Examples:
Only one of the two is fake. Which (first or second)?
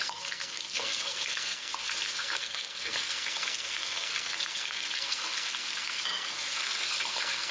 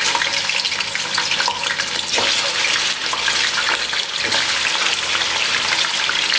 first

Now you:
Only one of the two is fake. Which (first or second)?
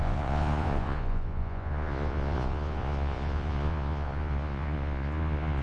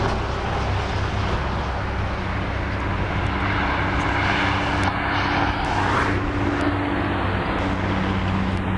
first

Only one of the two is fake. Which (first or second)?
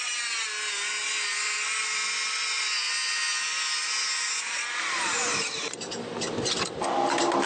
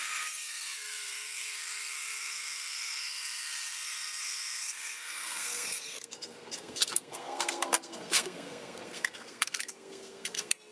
second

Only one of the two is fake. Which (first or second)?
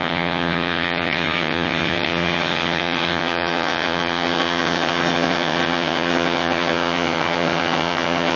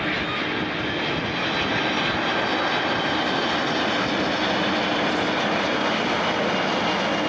first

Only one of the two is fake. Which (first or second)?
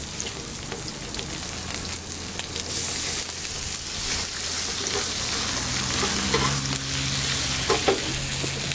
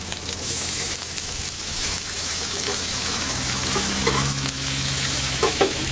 second